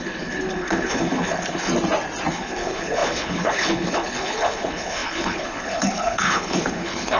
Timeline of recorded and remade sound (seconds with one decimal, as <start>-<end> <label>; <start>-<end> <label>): 0.0-1.7 remade; 1.7-2.3 recorded; 2.3-7.2 remade